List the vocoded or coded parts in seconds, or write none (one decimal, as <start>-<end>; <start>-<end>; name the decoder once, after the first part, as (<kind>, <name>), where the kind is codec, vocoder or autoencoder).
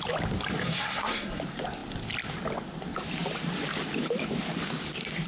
0.6-1.4 (codec, SNAC)